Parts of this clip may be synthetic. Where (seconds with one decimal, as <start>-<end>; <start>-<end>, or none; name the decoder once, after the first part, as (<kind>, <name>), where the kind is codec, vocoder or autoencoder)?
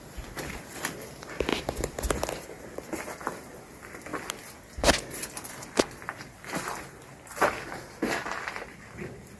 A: 0.0-4.1 (vocoder, BigVGAN v2); 5.5-9.4